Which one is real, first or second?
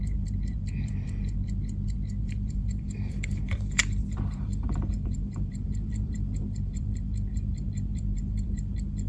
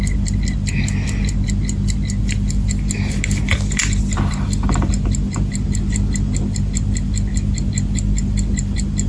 second